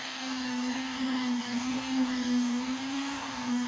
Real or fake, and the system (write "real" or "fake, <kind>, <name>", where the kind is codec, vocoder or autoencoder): fake, codec, DAC